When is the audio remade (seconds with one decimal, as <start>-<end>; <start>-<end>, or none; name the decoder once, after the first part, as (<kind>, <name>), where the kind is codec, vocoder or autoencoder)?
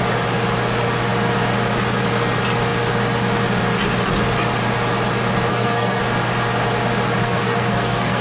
5.5-6.0 (codec, SNAC); 7.2-8.2